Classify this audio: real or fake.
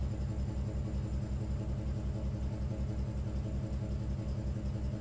real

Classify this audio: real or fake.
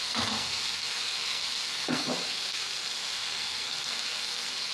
fake